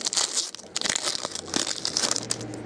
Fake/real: real